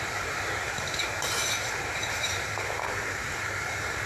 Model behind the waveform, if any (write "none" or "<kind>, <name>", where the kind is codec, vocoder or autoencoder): vocoder, BigVGAN v2